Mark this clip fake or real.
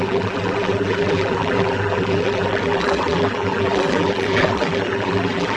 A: fake